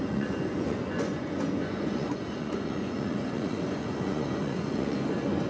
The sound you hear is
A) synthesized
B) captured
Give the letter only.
A